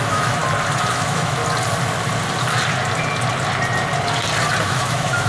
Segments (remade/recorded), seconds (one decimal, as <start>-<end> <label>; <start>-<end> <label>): 0.0-0.4 remade; 0.4-0.9 recorded; 0.9-1.4 remade; 1.4-4.6 recorded; 4.6-5.3 remade